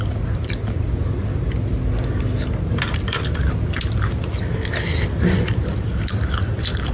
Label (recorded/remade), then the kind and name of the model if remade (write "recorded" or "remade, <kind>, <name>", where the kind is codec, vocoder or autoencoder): recorded